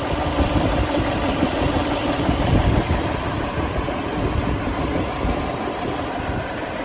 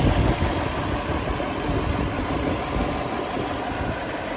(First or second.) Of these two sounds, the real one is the second